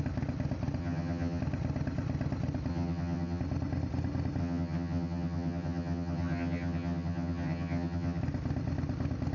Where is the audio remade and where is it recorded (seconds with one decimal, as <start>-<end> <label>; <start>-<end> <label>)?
0.0-0.8 recorded; 0.8-1.4 remade; 1.4-2.7 recorded; 2.7-3.4 remade; 3.4-4.4 recorded; 4.4-8.2 remade; 8.2-9.3 recorded